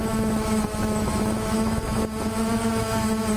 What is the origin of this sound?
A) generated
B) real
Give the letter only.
A